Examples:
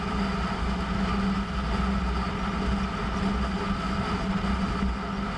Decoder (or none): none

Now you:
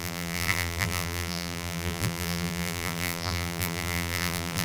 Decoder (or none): vocoder, BigVGAN v2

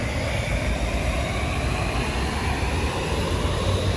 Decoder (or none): none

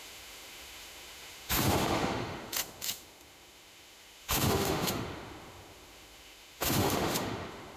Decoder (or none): autoencoder, DAC-VAE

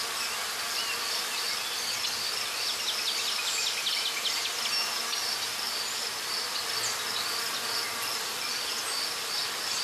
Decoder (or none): none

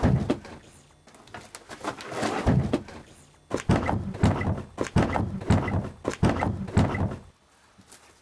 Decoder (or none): none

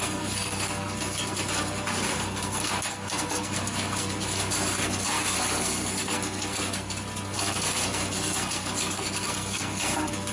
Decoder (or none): codec, SNAC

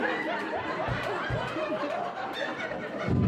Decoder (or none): none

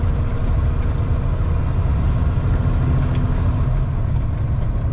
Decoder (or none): none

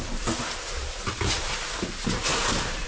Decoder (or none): none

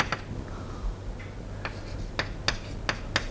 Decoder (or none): none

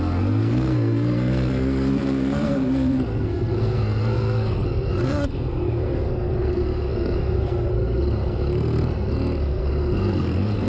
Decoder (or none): codec, SNAC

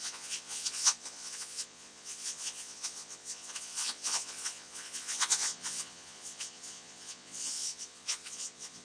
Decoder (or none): vocoder, Vocos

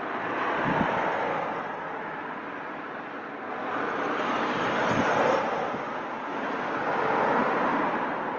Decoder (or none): none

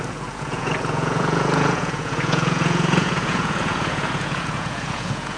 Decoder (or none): vocoder, Vocos